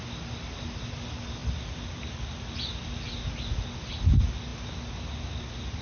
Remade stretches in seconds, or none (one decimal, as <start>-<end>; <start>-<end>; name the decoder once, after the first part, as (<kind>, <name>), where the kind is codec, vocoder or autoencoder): 1.4-2.5 (vocoder, BigVGAN v2)